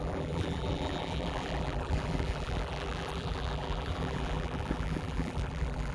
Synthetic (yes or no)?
yes